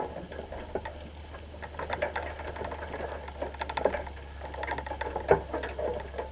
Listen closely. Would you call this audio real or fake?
real